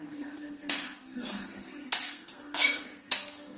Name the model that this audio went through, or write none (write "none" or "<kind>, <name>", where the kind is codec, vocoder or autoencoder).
codec, SNAC